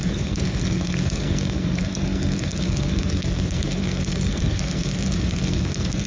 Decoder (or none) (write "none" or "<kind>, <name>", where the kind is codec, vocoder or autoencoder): codec, SNAC